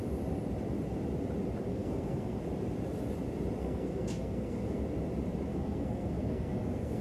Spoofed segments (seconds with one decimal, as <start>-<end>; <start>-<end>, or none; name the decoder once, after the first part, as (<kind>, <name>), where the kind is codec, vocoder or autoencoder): 1.7-2.4 (codec, SNAC); 3.6-4.8; 5.5-7.0